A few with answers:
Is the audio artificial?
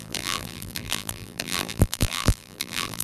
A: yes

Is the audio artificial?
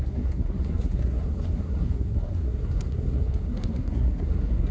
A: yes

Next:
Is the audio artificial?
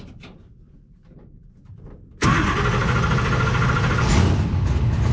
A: no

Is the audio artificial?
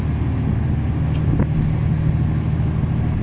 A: no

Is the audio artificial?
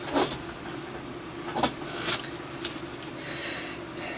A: no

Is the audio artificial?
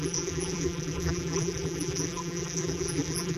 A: yes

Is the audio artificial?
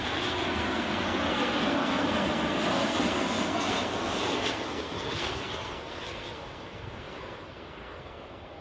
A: yes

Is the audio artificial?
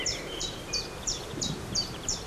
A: yes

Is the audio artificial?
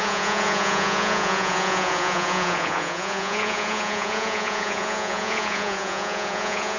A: yes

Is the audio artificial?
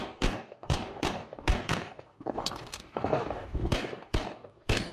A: yes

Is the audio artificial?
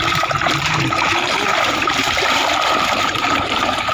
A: yes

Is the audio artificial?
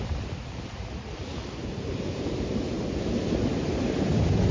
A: no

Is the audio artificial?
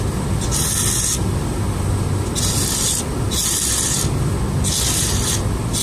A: no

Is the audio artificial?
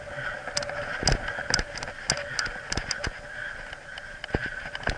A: no